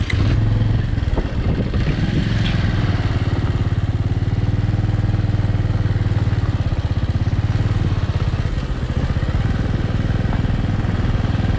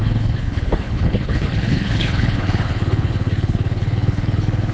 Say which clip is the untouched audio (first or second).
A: first